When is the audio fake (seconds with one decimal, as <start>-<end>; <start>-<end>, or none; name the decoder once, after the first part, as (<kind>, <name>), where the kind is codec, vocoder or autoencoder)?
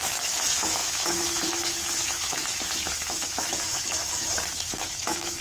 0.0-5.4 (autoencoder, DAC-VAE)